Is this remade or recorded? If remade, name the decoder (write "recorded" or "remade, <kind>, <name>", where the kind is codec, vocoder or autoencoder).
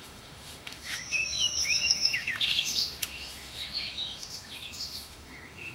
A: remade, autoencoder, DAC-VAE